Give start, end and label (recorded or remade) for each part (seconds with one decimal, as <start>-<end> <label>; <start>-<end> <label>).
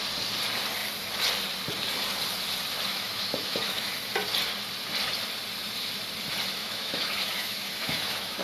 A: 0.0-2.9 recorded; 2.9-3.9 remade; 3.9-6.6 recorded; 6.6-8.4 remade